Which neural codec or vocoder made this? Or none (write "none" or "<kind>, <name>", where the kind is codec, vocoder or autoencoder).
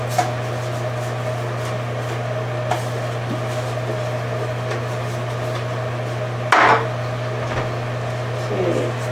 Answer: none